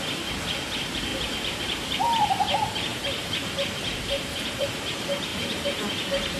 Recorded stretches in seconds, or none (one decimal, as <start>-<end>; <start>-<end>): none